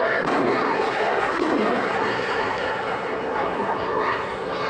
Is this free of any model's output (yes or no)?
no